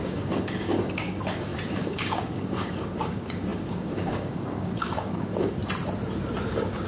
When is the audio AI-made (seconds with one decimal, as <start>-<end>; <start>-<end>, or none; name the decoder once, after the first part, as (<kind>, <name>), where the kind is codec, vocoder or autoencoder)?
0.0-5.6 (codec, DAC); 6.5-6.9